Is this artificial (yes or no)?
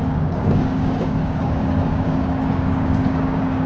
yes